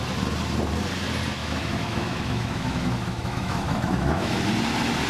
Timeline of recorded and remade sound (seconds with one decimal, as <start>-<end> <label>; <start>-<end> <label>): 0.0-1.4 recorded; 1.4-4.5 remade; 4.5-5.1 recorded